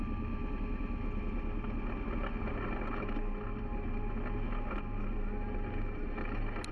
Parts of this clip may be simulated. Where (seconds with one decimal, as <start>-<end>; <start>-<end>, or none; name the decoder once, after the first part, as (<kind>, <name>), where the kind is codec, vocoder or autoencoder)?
none